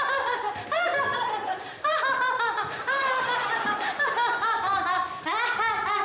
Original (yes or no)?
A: no